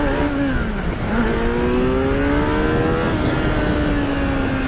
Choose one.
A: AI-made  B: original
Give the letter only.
B